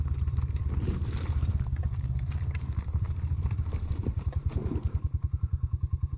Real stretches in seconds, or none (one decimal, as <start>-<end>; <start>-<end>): 0.0-2.9